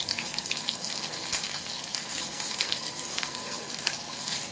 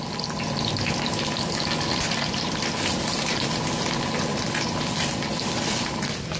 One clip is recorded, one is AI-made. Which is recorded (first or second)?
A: second